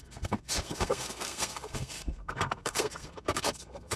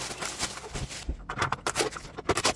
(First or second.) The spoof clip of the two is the first